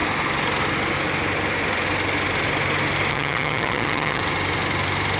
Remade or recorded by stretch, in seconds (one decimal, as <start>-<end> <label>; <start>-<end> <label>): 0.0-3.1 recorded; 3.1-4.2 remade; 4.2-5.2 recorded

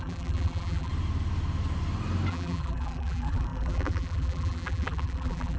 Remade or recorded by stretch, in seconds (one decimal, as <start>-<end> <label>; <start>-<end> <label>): 0.0-0.9 remade; 0.9-2.3 recorded; 2.3-5.6 remade

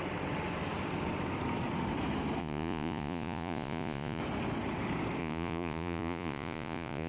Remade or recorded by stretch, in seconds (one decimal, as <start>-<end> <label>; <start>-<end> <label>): 0.0-2.4 recorded; 2.4-4.2 remade; 4.2-5.2 recorded; 5.2-7.1 remade

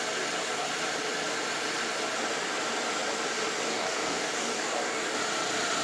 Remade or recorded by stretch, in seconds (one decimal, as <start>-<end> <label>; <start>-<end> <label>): 0.0-3.7 recorded; 3.7-5.2 remade; 5.2-5.8 recorded

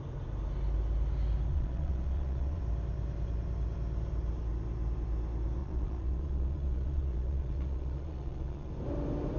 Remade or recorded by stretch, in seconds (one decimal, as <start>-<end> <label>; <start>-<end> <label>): 0.0-1.5 recorded; 1.5-2.6 remade; 2.6-5.6 recorded; 5.6-8.7 remade; 8.7-9.4 recorded

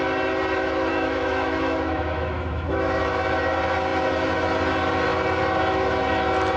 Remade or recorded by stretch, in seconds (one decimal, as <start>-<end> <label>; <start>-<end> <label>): 0.0-0.9 recorded; 0.9-3.0 remade; 3.0-6.6 recorded

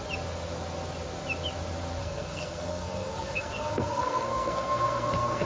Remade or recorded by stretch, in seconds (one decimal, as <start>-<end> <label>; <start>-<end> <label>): 0.0-2.0 recorded; 2.0-5.5 remade